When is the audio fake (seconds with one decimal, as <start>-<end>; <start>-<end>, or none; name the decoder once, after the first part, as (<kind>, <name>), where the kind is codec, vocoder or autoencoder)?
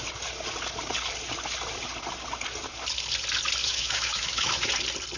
3.6-4.7 (autoencoder, DAC-VAE)